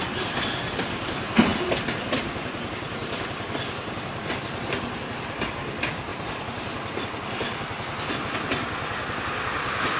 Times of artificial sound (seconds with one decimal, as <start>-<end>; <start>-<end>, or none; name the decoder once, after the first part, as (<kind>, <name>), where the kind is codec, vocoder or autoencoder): none